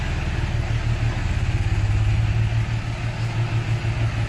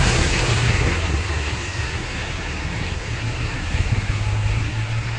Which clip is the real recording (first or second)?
first